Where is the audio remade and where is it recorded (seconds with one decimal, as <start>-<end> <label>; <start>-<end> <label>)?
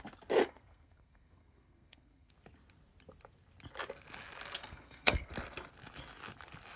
0.0-0.4 recorded; 0.4-2.3 remade; 2.3-4.6 recorded; 4.6-5.3 remade; 5.3-6.8 recorded